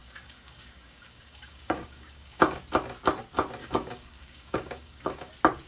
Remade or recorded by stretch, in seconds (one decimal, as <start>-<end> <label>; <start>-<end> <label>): 0.0-2.6 remade; 2.6-3.6 recorded; 3.6-5.3 remade; 5.3-5.7 recorded